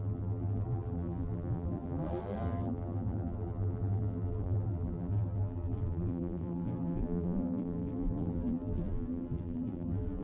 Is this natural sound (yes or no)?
no